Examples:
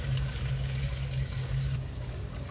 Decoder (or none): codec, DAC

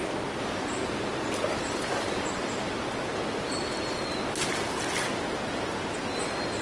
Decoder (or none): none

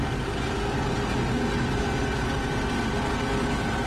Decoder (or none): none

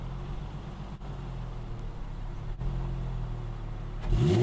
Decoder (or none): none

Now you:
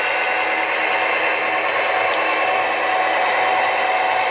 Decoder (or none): none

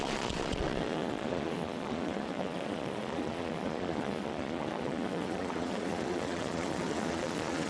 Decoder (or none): vocoder, Vocos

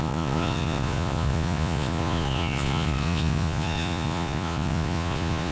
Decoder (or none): vocoder, Vocos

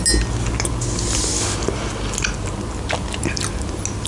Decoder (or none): none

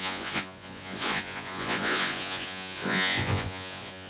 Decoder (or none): vocoder, Vocos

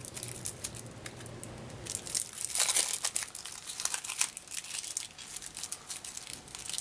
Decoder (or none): none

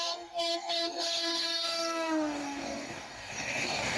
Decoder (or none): codec, DAC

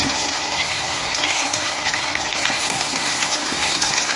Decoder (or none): codec, SNAC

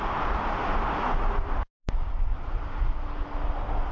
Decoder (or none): none